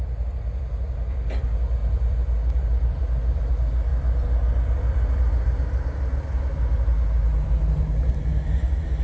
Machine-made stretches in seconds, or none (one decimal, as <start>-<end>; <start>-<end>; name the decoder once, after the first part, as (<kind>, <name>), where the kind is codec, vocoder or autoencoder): 1.8-3.5 (vocoder, BigVGAN v2); 3.9-5.2; 7.3-8.1